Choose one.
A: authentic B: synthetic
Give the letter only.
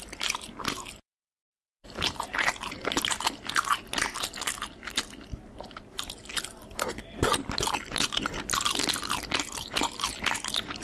A